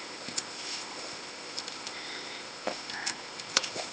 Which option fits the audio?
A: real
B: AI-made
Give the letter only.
B